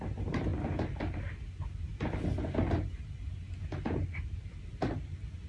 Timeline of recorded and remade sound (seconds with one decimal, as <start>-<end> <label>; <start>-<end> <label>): 0.0-5.5 recorded

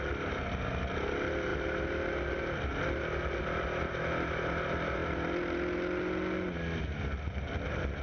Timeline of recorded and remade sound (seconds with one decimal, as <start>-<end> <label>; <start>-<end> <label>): 0.0-8.0 recorded